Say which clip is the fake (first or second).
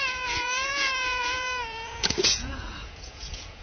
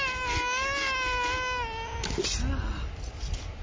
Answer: first